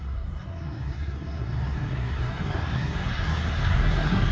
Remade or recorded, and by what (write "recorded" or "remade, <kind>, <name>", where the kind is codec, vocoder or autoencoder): remade, codec, SNAC